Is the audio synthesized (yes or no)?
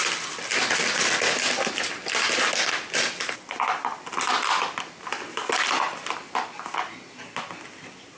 no